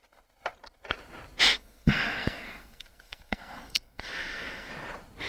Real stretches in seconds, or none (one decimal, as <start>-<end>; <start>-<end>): 0.0-1.5; 4.7-5.3